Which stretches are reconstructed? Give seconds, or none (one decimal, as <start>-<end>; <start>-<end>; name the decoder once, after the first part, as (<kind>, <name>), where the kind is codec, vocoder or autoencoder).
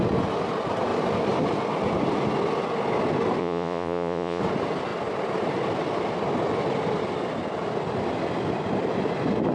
3.4-4.4 (vocoder, Vocos)